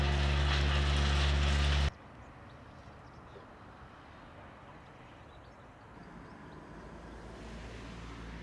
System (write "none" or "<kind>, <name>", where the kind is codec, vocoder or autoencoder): none